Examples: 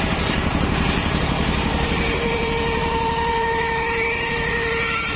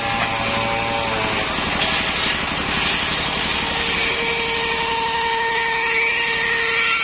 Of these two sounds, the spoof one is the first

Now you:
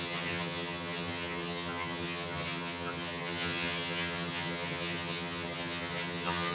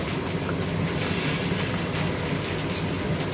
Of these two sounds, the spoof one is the first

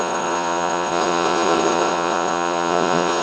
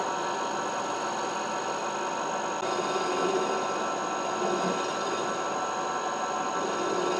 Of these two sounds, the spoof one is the first